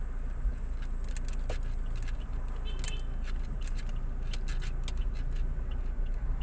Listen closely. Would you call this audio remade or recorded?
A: recorded